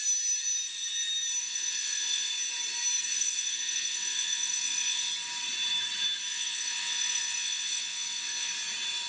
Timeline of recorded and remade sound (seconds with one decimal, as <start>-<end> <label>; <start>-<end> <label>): 0.0-1.4 recorded; 1.4-2.3 remade; 2.3-3.1 recorded; 3.1-5.1 remade; 5.1-6.3 recorded; 6.3-8.5 remade; 8.5-9.1 recorded